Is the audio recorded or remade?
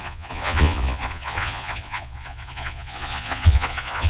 remade